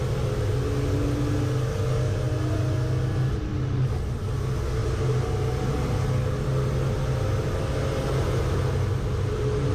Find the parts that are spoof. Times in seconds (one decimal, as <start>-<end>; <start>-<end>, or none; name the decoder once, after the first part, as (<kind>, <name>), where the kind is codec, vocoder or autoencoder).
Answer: none